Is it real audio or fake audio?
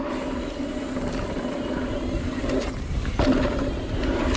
real